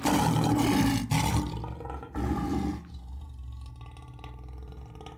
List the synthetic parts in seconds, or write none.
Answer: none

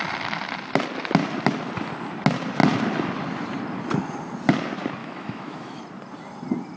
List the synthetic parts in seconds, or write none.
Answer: 5.0-5.8